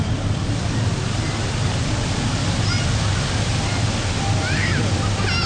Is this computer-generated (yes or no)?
no